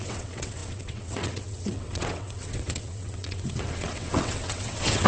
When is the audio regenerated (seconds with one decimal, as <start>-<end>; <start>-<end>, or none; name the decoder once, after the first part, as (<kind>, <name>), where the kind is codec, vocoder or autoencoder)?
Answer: 0.0-5.1 (vocoder, WaveNeXt)